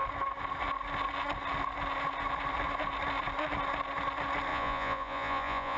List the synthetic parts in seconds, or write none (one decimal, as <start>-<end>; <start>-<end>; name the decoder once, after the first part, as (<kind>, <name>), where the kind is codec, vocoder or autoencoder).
4.5-5.8 (vocoder, Vocos)